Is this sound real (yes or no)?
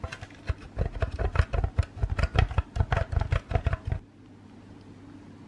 yes